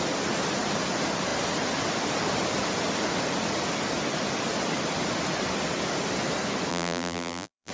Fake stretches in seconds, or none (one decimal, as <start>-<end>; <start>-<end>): 6.7-7.7